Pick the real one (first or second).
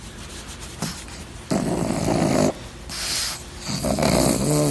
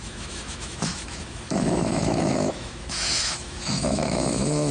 first